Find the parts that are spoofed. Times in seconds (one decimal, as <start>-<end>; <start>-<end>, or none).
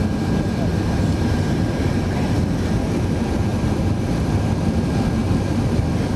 0.7-2.1; 3.5-4.5; 5.2-5.8